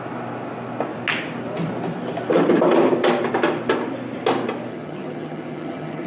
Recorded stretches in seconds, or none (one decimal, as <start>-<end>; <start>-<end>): 0.0-4.7